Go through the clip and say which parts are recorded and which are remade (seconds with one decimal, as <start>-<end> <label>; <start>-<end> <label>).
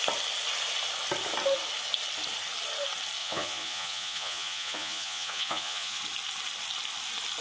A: 0.0-3.2 recorded; 3.2-6.0 remade; 6.0-7.4 recorded